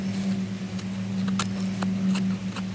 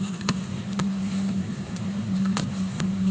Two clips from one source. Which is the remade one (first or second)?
second